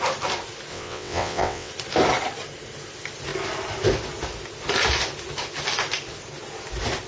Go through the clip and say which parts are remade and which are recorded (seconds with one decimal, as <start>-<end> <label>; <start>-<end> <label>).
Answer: 0.0-0.7 recorded; 0.7-1.7 remade; 1.7-7.1 recorded